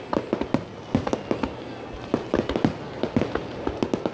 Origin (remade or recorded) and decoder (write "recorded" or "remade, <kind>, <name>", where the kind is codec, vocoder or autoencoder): recorded